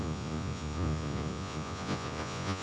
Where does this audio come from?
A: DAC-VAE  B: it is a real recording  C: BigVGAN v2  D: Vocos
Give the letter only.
D